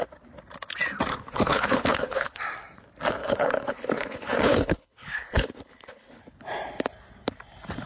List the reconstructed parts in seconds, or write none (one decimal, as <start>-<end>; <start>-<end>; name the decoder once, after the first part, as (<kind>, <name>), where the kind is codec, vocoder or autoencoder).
1.1-2.4 (codec, HILCodec); 3.2-6.2